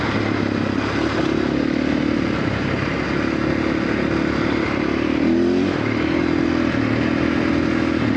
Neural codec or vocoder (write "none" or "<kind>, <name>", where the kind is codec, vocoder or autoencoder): none